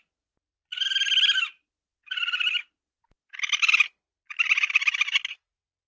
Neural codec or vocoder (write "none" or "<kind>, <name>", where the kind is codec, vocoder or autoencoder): none